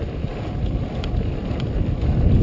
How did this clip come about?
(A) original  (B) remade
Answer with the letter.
A